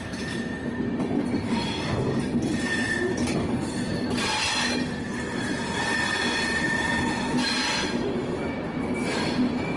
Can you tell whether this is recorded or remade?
recorded